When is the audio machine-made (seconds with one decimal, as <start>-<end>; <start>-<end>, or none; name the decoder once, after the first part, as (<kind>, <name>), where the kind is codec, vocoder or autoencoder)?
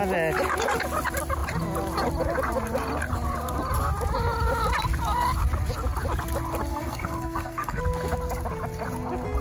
6.7-7.8 (codec, SNAC)